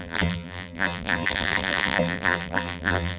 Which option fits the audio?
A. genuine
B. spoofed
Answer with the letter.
B